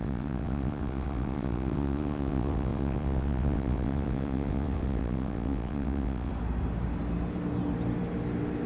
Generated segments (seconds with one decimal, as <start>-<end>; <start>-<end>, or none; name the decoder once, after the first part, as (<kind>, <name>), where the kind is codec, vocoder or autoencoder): 0.0-6.3 (vocoder, WaveNeXt)